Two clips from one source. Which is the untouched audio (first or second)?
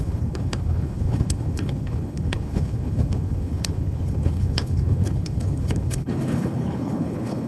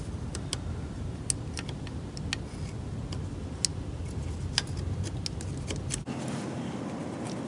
second